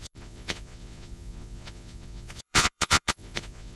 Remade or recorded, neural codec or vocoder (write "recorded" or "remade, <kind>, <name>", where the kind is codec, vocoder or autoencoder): remade, vocoder, Vocos